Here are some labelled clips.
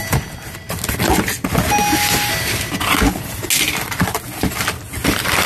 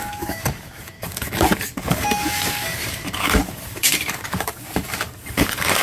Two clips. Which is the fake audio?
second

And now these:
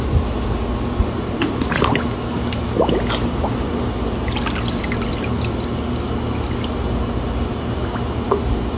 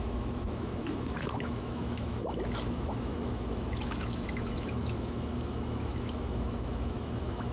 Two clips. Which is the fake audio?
second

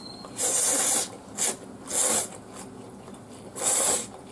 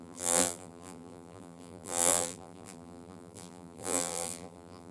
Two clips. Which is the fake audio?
second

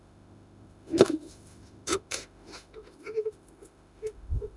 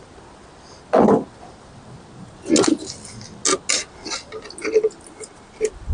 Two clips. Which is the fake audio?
first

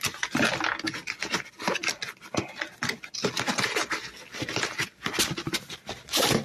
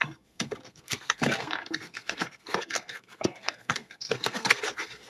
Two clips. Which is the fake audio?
second